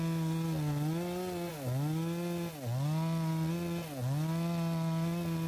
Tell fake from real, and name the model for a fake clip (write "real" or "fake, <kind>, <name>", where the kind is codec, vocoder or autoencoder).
real